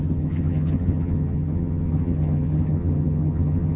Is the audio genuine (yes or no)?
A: no